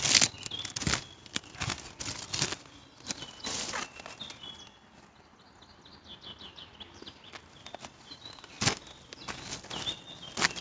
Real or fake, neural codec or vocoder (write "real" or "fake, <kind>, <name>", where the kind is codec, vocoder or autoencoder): real